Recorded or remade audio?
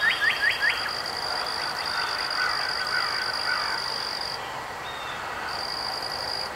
recorded